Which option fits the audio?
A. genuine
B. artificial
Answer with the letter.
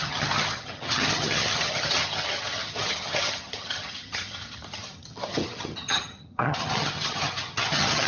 B